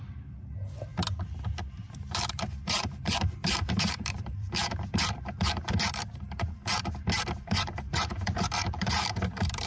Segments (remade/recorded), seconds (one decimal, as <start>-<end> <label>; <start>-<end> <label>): 0.0-0.9 remade; 0.9-1.6 recorded; 1.6-9.7 remade